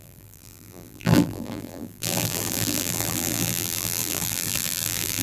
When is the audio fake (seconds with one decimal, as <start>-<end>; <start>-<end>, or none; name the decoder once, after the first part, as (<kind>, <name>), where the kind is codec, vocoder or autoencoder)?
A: 0.0-5.2 (vocoder, BigVGAN v2)